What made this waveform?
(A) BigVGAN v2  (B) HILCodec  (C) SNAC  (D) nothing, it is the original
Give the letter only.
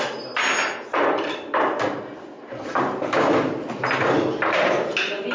D